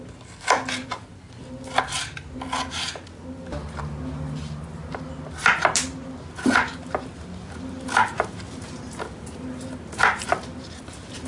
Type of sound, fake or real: real